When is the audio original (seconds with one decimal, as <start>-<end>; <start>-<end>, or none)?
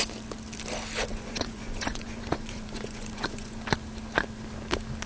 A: 0.0-1.1; 3.6-5.1